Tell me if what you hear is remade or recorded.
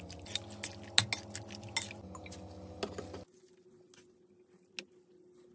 recorded